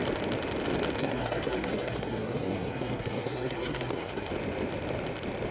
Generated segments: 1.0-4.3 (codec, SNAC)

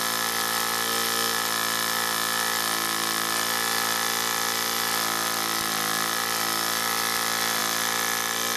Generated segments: none

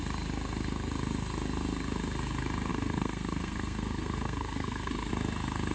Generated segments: 2.7-5.1 (codec, SNAC)